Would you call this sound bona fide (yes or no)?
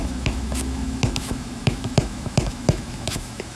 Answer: no